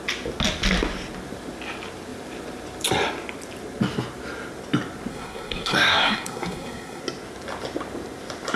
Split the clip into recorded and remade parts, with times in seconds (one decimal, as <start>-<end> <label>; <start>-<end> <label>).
0.0-5.1 recorded; 5.1-7.0 remade; 7.0-8.6 recorded